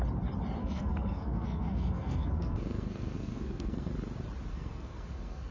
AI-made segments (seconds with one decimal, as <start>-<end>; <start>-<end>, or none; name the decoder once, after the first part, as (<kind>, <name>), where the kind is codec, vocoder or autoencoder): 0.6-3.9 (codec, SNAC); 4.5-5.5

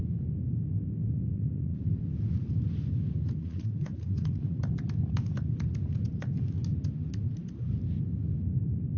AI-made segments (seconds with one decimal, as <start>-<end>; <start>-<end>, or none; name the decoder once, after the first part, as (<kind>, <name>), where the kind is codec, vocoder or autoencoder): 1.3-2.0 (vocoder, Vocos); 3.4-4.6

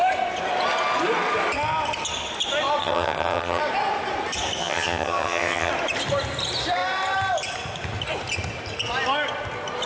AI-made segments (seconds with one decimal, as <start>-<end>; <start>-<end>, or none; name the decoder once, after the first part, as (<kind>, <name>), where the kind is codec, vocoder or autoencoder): 2.8-3.6 (vocoder, HiFi-GAN); 4.6-5.7

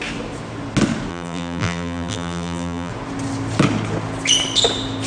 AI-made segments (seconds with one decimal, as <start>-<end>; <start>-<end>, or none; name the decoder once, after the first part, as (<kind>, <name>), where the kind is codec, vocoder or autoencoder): 1.1-2.9 (vocoder, BigVGAN v2)